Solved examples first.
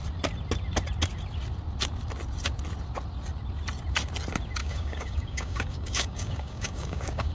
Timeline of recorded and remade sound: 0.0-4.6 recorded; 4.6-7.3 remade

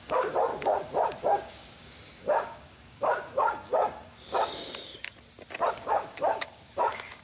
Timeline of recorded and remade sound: 0.0-0.5 remade; 0.5-1.2 recorded; 1.2-4.9 remade; 4.9-5.7 recorded; 5.7-7.2 remade

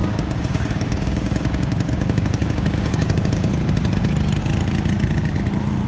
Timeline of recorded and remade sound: 0.0-3.5 remade; 3.5-5.9 recorded

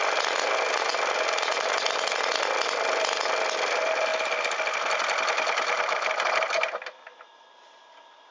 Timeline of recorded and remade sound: 0.0-8.3 recorded

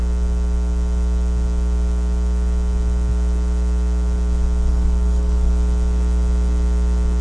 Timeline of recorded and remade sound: 0.0-4.7 recorded; 4.7-5.5 remade; 5.5-7.2 recorded

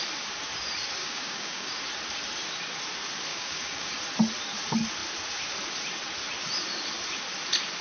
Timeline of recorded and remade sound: 0.0-1.0 recorded; 1.0-1.8 remade; 1.8-3.3 recorded; 3.3-3.9 remade; 3.9-7.8 recorded

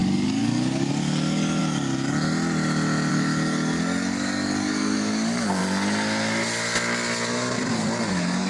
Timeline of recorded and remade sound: 0.0-1.6 remade; 1.6-3.1 recorded; 3.1-5.6 remade; 5.6-8.1 recorded; 8.1-8.5 remade

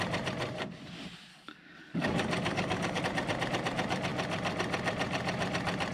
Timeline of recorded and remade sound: 0.0-1.3 recorded; 1.3-3.0 remade; 3.0-5.9 recorded